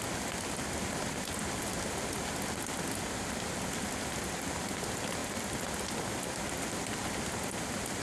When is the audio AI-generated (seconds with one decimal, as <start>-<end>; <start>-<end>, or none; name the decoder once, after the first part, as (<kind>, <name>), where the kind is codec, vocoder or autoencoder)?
none